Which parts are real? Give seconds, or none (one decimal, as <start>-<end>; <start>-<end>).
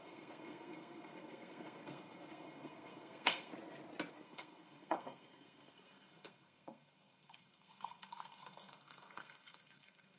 3.5-4.1